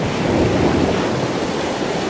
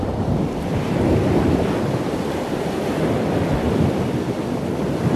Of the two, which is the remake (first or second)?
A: second